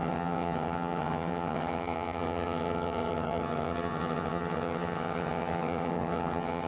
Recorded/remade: remade